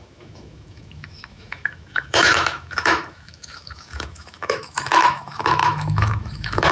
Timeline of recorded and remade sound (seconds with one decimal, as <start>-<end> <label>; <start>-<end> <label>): 0.0-6.7 remade

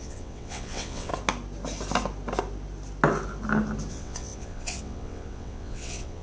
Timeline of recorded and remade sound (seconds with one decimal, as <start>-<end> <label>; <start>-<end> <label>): 0.0-1.1 remade; 1.1-3.9 recorded; 3.9-6.2 remade